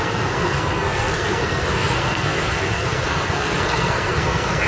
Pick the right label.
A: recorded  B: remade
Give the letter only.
B